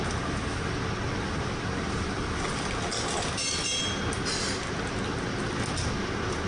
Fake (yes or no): no